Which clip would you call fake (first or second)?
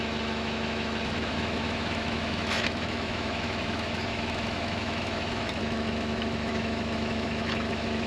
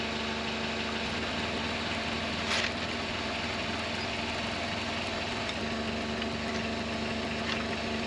first